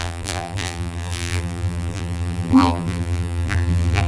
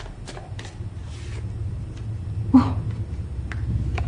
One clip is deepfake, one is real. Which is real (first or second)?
second